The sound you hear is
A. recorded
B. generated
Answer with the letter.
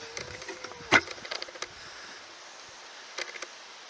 A